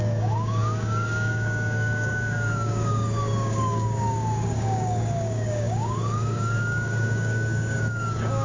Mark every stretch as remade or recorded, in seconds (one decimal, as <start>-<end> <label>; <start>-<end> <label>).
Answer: 0.0-8.4 remade